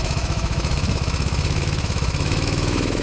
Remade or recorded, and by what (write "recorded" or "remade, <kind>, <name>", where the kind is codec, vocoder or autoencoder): remade, autoencoder, DAC-VAE